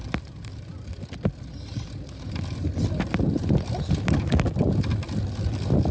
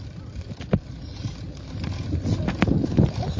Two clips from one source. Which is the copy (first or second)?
second